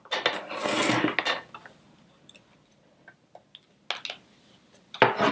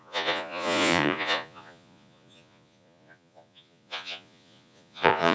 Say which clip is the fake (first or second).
second